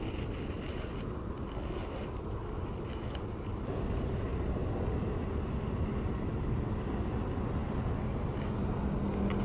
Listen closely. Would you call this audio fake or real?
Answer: real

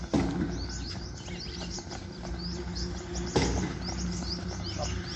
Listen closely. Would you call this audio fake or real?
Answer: real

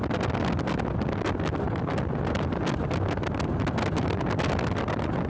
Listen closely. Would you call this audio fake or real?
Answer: real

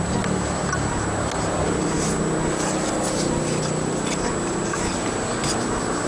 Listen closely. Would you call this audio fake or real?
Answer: real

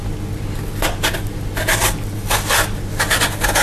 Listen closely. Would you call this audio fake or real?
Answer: real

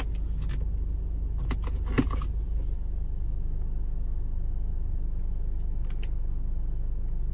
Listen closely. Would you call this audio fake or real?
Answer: real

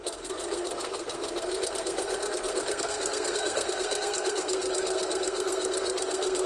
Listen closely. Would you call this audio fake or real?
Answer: fake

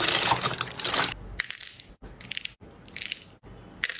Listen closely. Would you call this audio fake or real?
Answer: real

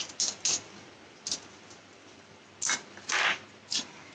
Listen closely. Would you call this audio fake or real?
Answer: real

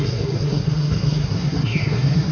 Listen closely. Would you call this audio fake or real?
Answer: fake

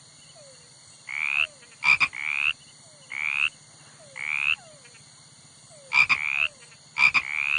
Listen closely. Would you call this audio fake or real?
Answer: real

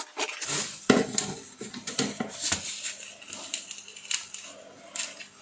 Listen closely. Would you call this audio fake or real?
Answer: real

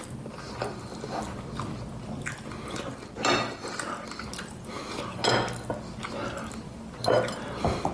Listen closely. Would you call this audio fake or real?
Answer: real